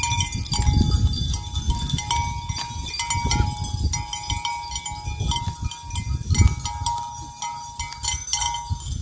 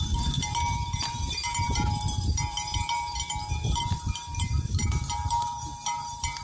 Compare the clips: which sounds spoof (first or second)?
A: second